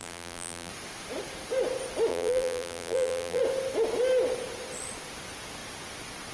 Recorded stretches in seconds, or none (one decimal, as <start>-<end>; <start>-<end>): 0.7-2.1; 3.4-6.3